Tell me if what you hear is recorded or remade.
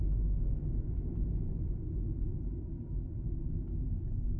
recorded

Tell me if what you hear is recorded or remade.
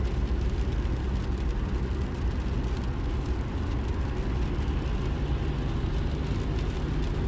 recorded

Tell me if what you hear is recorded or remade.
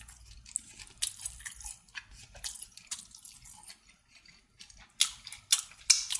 recorded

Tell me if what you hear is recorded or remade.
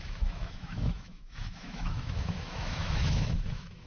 remade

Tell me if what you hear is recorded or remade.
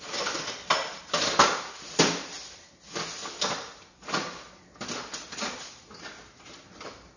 recorded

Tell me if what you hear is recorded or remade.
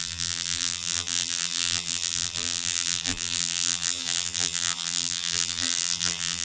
remade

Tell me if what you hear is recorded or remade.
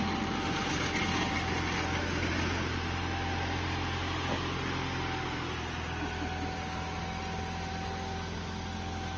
recorded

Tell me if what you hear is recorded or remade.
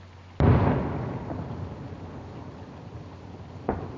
recorded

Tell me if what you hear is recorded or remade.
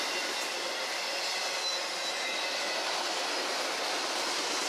recorded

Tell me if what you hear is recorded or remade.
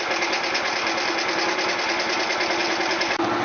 recorded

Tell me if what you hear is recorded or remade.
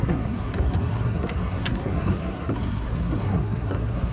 remade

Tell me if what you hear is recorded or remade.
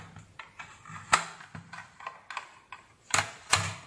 recorded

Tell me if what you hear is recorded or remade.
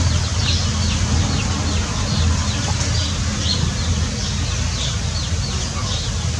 recorded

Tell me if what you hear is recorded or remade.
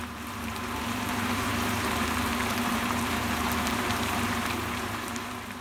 remade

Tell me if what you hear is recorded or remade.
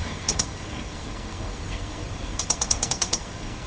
remade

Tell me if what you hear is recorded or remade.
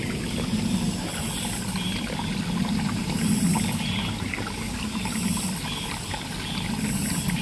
recorded